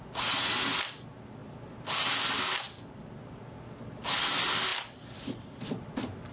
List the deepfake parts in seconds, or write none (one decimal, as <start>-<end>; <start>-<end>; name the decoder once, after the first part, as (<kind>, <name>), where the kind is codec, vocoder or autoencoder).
none